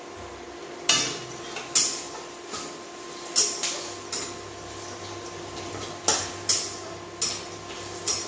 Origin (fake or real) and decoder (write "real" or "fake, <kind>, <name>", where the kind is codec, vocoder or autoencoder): real